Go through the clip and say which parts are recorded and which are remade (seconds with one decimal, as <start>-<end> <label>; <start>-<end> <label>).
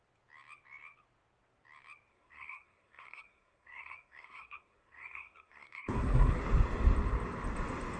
0.0-2.1 recorded; 2.1-6.4 remade; 6.4-8.0 recorded